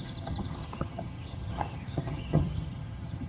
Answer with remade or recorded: remade